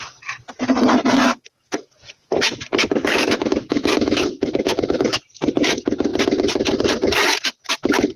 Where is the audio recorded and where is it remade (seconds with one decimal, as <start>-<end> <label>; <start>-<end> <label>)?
0.0-1.3 recorded; 1.3-5.2 remade; 5.2-8.2 recorded

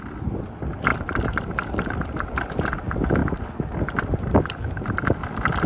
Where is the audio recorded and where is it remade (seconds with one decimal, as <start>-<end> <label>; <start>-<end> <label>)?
0.0-0.9 recorded; 0.9-1.5 remade; 1.5-5.7 recorded

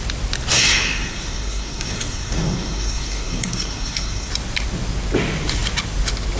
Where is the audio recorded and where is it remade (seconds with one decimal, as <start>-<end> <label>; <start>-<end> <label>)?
0.0-0.5 recorded; 0.5-4.3 remade; 4.3-6.4 recorded

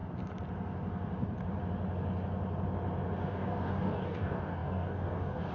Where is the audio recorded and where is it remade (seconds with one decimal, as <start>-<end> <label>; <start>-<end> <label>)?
0.0-3.3 recorded; 3.3-5.5 remade

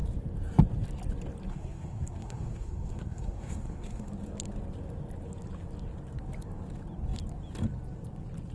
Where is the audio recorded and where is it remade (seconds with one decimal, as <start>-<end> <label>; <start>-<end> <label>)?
0.0-1.5 recorded; 1.5-4.1 remade; 4.1-8.5 recorded